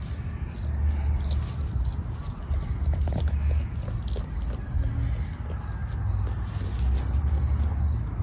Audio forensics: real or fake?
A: real